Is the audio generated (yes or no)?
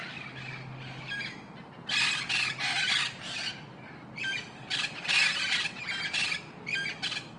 no